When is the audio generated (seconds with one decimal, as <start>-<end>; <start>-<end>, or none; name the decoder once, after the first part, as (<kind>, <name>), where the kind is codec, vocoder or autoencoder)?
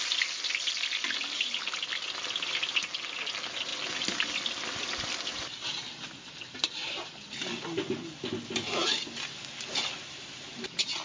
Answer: none